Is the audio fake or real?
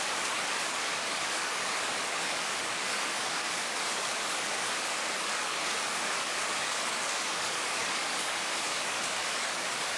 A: fake